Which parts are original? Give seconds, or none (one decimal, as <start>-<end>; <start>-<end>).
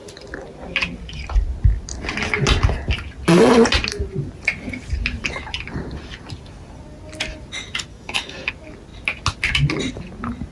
0.0-7.9; 8.5-10.5